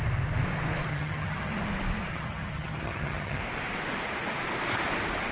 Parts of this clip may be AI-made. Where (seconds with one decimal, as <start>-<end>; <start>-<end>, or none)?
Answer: 0.9-1.5; 2.1-3.4